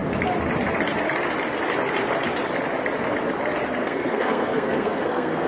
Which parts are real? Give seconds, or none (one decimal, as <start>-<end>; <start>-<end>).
0.0-3.8